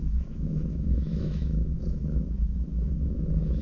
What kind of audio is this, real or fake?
fake